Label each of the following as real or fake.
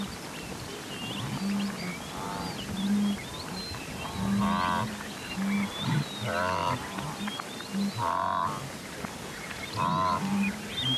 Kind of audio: real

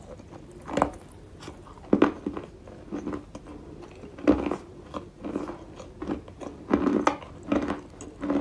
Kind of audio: real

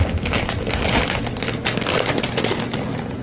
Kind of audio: real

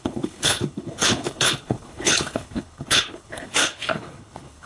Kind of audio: fake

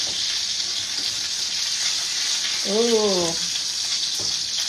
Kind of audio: real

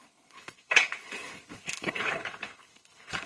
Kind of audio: fake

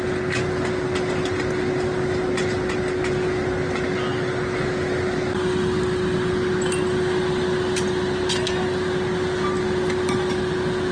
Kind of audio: real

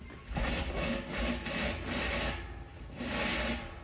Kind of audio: real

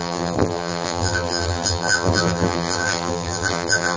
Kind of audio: fake